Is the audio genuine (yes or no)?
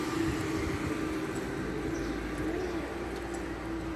yes